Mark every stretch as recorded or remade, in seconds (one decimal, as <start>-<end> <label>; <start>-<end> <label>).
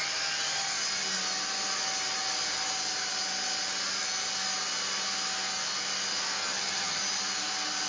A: 0.0-6.4 recorded; 6.4-7.0 remade; 7.0-7.9 recorded